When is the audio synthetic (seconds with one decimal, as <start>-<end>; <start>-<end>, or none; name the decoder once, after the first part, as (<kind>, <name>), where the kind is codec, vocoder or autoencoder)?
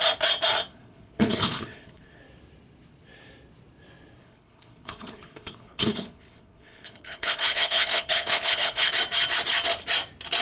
0.7-2.2 (codec, HILCodec); 4.2-8.9